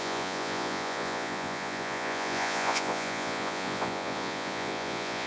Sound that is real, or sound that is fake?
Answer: fake